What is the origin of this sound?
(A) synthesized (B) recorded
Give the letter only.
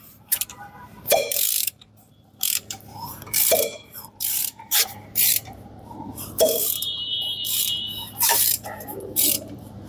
A